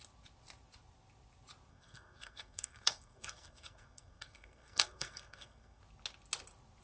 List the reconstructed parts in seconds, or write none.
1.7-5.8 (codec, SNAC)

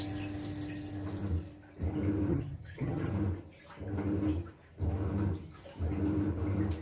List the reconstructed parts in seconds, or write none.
2.3-3.1 (vocoder, HiFi-GAN)

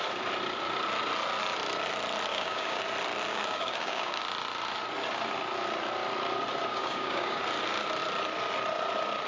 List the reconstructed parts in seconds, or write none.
2.3-2.8 (codec, DAC); 3.3-4.2; 6.7-7.4

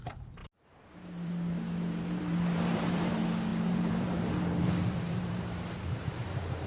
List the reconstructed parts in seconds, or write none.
0.0-6.7 (vocoder, BigVGAN v2)

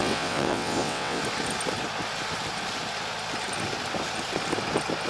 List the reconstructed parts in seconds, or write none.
0.0-1.2 (vocoder, WaveNeXt)

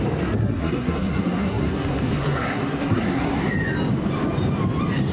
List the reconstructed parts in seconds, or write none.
0.4-3.5 (codec, SNAC)

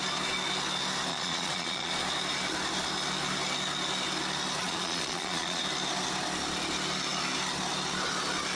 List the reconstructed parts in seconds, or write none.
1.1-1.9 (vocoder, Vocos); 4.6-5.6

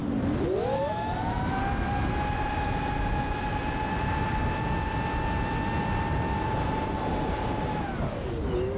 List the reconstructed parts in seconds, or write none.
none